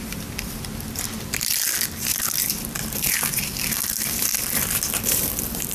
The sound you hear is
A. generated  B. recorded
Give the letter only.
A